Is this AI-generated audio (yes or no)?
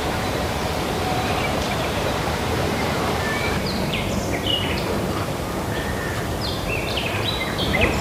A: yes